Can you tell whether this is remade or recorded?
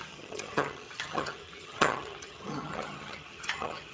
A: remade